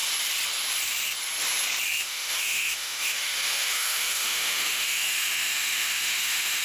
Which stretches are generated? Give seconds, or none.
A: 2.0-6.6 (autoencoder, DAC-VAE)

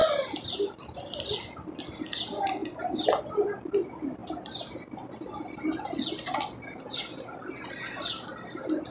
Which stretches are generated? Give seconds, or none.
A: 0.0-1.8 (vocoder, BigVGAN v2)